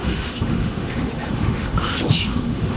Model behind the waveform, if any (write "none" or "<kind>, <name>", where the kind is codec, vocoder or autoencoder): autoencoder, DAC-VAE